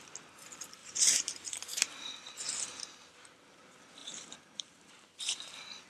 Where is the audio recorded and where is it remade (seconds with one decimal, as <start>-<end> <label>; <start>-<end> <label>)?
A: 0.0-0.8 recorded; 0.8-2.8 remade; 2.8-4.0 recorded; 4.0-5.4 remade; 5.4-5.9 recorded